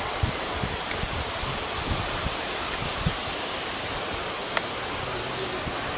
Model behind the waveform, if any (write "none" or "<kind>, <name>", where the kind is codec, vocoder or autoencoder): none